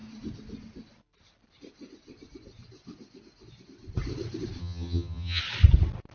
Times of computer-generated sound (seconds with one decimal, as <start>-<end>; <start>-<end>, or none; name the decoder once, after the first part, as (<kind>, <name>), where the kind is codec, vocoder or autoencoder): 4.6-5.4 (vocoder, HiFi-GAN)

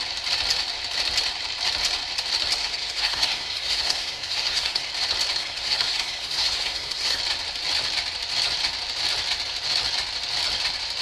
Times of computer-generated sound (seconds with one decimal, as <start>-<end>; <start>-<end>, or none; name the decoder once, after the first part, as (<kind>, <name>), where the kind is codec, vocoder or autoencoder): 2.6-4.9 (codec, SNAC); 5.4-7.2